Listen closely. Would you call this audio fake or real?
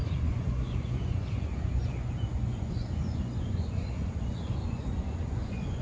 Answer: fake